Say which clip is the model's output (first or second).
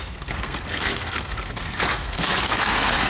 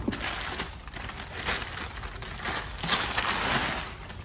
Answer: first